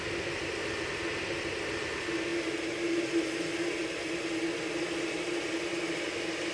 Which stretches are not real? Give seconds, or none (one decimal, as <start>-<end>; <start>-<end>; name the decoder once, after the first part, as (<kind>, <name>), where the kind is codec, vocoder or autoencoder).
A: none

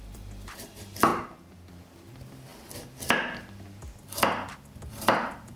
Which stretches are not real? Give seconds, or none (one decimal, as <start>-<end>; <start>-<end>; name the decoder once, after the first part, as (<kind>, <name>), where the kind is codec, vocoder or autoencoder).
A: 0.0-1.1 (vocoder, BigVGAN v2); 1.7-2.5; 3.4-3.8; 4.9-5.6